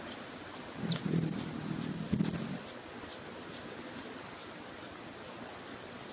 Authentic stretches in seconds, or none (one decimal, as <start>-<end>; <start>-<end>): 0.0-6.1